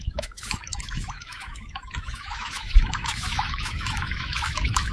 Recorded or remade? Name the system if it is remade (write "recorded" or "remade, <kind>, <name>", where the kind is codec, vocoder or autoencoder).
remade, autoencoder, DAC-VAE